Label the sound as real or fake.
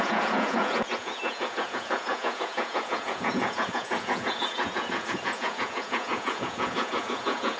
fake